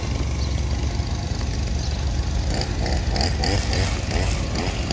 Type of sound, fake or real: real